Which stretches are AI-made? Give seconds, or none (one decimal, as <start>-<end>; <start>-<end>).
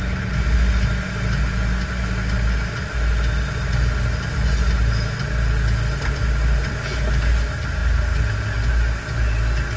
none